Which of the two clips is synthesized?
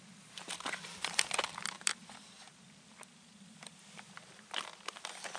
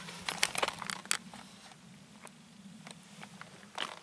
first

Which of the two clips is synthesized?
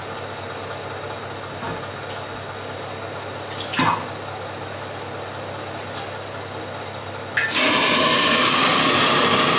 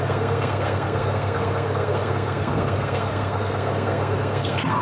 second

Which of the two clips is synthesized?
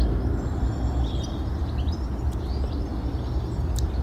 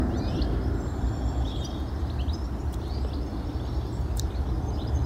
second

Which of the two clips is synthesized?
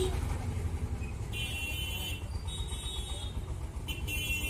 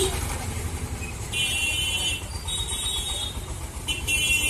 second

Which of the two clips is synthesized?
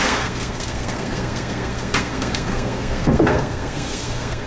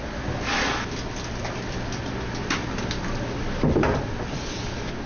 first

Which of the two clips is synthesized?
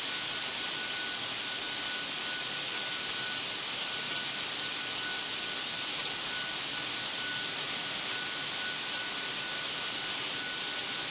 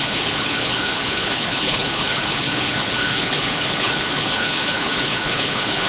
second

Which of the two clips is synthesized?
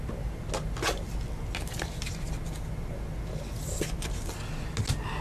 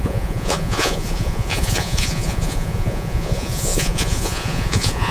second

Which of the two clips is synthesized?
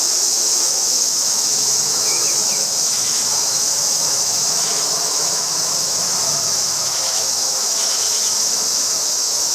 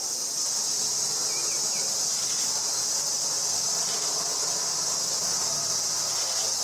first